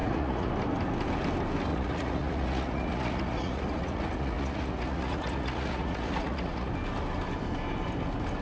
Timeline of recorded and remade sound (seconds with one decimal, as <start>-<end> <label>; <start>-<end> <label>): 0.0-0.5 remade; 0.5-1.7 recorded; 1.7-6.7 remade; 6.7-8.4 recorded